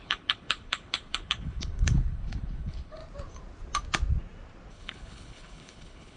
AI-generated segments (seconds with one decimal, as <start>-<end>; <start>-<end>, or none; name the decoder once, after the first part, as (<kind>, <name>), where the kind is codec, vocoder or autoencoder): 0.0-3.0 (codec, HILCodec); 4.7-6.2